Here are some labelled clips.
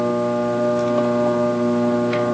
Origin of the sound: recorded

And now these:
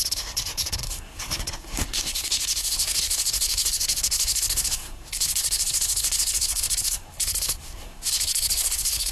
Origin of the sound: remade